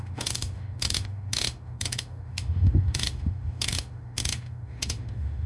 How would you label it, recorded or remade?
remade